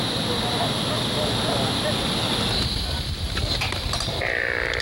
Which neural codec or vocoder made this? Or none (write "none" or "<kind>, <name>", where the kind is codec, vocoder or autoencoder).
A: none